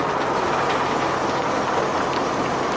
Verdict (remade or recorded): recorded